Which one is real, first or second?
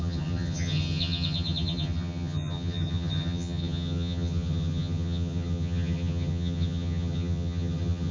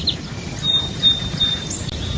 second